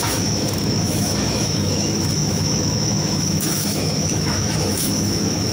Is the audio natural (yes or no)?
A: no